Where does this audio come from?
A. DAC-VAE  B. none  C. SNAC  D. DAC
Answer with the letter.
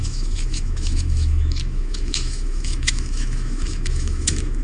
A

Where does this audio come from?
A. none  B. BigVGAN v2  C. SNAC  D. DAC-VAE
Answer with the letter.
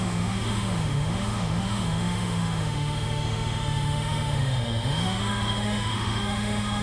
D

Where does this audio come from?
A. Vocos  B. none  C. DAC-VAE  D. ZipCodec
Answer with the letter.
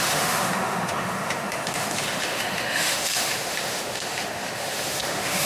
C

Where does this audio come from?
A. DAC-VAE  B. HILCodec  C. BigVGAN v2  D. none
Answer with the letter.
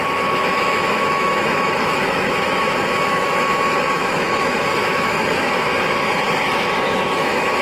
A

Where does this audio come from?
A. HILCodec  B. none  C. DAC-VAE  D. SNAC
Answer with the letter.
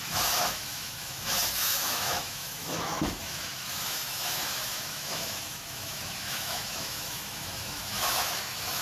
C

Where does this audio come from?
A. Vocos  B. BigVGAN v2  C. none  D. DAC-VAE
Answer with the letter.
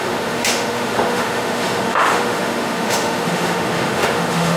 D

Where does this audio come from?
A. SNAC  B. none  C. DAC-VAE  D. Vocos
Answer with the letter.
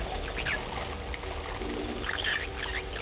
B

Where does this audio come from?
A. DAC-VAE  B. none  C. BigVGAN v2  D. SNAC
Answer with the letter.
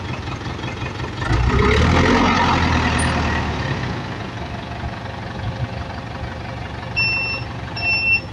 B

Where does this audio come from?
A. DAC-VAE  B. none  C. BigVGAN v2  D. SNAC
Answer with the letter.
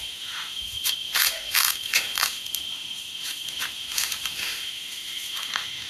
A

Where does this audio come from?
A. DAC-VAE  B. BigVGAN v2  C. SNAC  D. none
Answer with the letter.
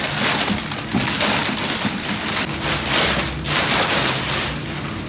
D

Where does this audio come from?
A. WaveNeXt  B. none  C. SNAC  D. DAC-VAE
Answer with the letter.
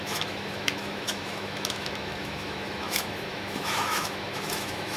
D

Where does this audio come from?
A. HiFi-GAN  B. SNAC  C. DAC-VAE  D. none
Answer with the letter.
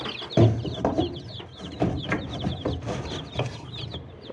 D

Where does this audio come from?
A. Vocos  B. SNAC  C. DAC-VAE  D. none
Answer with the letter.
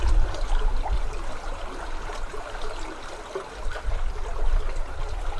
D